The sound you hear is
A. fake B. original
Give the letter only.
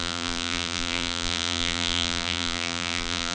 A